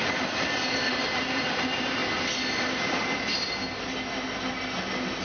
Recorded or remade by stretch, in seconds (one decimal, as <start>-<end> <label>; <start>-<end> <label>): 0.0-2.0 remade; 2.0-5.2 recorded